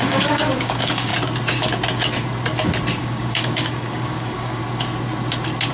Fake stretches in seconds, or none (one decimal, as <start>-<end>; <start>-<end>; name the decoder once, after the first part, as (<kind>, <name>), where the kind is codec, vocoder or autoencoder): 0.0-1.1 (codec, DAC); 3.0-4.6